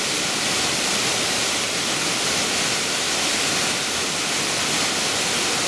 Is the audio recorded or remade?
recorded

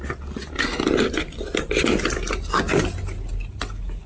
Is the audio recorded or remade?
recorded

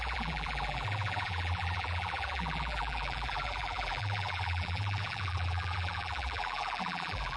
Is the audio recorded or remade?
remade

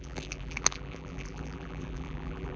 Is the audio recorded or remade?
remade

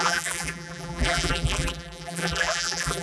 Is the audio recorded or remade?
remade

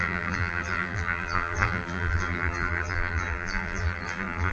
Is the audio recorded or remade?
remade